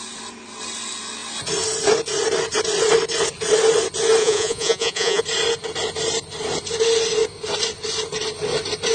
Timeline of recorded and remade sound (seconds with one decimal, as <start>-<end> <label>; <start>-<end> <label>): 0.0-4.2 recorded; 4.2-5.2 remade; 5.2-8.9 recorded